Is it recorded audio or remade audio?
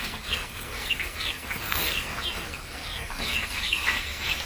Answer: remade